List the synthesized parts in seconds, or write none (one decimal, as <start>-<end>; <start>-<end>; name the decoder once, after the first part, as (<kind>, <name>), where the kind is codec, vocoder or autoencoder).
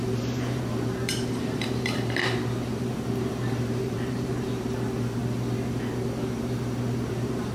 0.0-5.2 (vocoder, BigVGAN v2); 7.1-7.5